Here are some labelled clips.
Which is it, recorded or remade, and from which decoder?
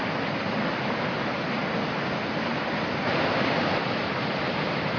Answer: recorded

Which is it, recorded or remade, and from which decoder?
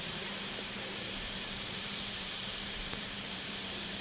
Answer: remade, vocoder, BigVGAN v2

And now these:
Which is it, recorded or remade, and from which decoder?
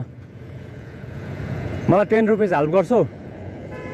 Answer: remade, vocoder, Vocos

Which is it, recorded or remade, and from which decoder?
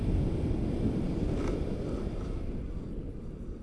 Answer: recorded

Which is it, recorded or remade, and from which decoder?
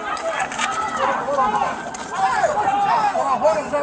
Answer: recorded